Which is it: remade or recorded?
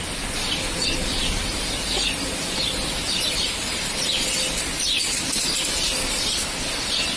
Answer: recorded